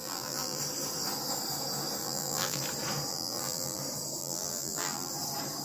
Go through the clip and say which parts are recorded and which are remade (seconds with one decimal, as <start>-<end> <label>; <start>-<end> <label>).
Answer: 0.0-0.6 remade; 0.6-2.0 recorded; 2.0-2.6 remade; 2.6-3.1 recorded; 3.1-3.8 remade; 3.8-4.2 recorded; 4.2-5.1 remade; 5.1-5.6 recorded